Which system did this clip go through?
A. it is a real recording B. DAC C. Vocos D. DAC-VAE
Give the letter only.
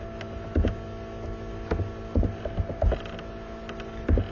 A